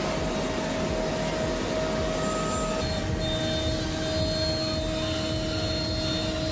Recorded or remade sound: recorded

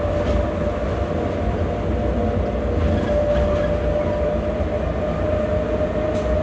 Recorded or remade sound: recorded